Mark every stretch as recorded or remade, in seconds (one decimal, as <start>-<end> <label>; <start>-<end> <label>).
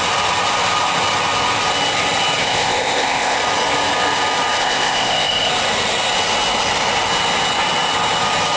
0.0-2.4 recorded; 2.4-3.4 remade; 3.4-4.6 recorded; 4.6-5.5 remade; 5.5-8.6 recorded